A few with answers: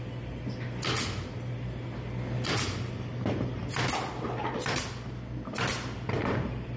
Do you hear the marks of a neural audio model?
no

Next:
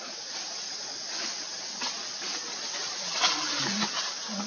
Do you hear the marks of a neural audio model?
no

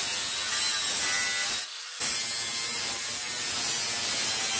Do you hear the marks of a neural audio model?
no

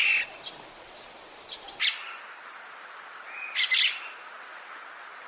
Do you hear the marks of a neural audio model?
no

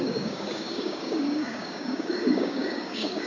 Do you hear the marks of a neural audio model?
yes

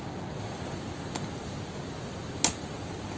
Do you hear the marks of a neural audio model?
no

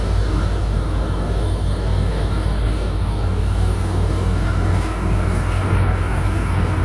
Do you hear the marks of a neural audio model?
yes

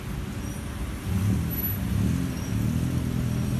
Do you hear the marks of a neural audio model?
no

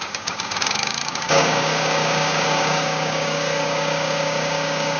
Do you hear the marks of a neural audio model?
yes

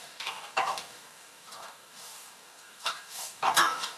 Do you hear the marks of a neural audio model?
yes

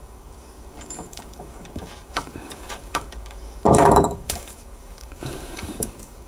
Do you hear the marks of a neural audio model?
yes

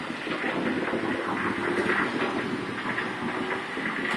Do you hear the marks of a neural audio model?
no